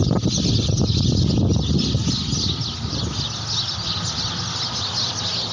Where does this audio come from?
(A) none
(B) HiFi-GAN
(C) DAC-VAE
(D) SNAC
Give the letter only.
A